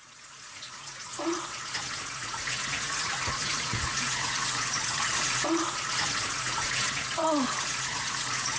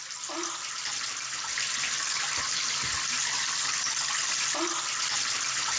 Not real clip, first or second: first